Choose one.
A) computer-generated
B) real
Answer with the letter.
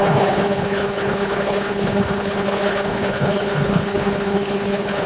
A